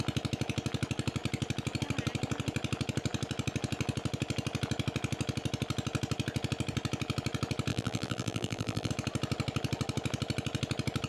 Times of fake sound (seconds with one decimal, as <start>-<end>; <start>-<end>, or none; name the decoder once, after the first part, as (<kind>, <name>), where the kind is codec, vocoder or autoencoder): 7.7-8.9 (vocoder, BigVGAN v2)